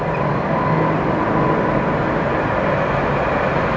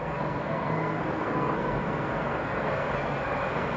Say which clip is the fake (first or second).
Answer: second